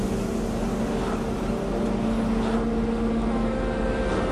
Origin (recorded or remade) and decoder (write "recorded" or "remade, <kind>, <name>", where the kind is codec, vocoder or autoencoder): recorded